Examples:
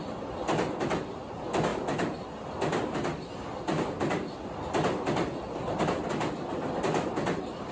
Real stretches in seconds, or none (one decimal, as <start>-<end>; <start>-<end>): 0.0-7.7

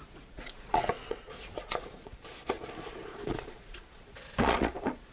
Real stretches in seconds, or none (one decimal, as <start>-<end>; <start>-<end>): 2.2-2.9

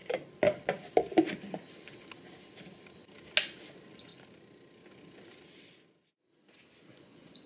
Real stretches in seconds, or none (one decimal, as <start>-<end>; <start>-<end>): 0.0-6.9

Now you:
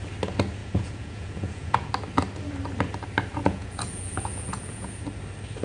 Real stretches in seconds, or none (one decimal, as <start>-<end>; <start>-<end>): 0.0-0.6; 1.9-3.4; 5.0-5.6